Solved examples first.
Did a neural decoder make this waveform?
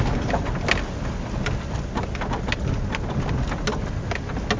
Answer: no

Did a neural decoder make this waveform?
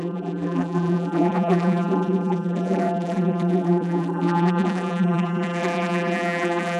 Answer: yes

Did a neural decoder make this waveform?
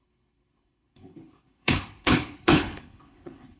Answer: yes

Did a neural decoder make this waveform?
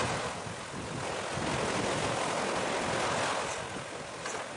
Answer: no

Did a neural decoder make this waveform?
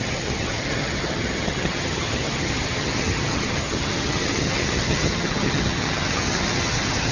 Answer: yes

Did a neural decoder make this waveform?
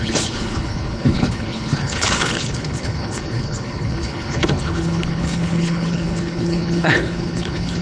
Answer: yes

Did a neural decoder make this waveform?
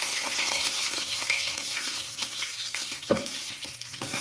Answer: yes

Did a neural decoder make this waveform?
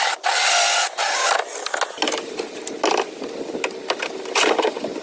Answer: no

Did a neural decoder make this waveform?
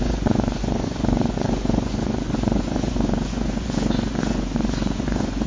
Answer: yes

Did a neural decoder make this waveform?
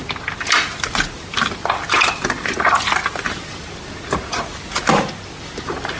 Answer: no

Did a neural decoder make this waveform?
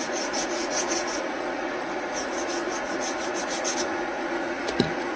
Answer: yes